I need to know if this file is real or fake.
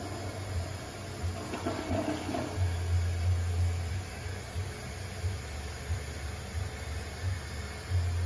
real